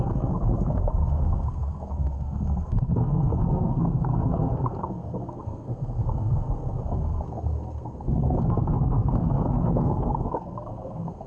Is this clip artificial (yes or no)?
yes